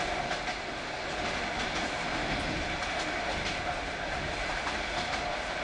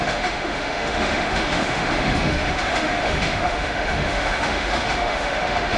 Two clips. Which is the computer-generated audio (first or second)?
second